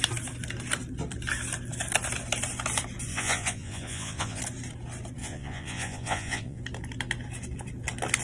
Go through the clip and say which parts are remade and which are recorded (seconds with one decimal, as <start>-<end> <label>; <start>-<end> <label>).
0.0-3.1 recorded; 3.1-4.4 remade; 4.4-5.2 recorded; 5.2-6.6 remade; 6.6-8.2 recorded